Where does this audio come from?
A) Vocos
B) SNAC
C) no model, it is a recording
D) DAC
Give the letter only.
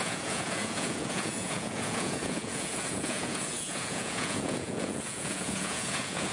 A